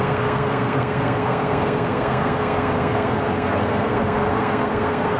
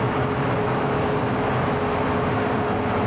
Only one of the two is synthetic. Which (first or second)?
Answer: first